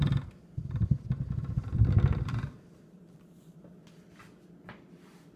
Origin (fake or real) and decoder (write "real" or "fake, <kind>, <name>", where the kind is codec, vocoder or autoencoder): fake, vocoder, BigVGAN v2